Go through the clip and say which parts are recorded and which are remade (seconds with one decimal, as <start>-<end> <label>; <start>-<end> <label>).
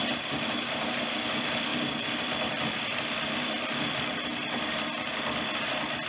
0.0-6.1 recorded